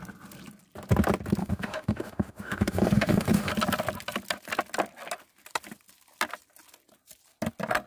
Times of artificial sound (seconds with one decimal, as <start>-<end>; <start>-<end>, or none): 1.4-3.5

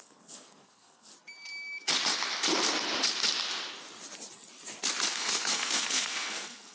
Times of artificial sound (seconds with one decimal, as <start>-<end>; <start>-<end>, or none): 0.0-1.1; 5.1-6.7

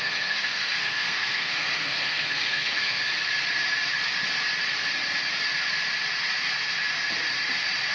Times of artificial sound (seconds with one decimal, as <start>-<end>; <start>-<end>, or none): 0.0-3.1

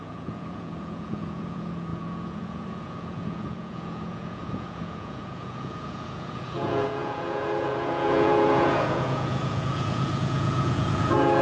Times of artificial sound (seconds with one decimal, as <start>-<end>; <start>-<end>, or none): 0.0-11.4